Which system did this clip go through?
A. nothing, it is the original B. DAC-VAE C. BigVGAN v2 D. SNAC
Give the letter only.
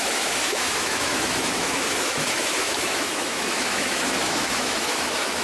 B